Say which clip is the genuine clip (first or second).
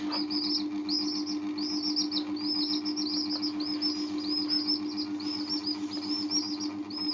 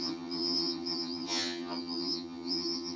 first